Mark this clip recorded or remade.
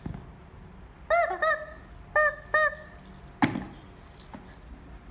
recorded